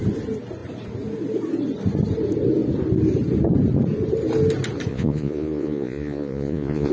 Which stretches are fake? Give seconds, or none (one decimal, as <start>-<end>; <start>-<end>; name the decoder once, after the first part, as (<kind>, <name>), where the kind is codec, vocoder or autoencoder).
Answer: 4.9-6.9 (vocoder, Vocos)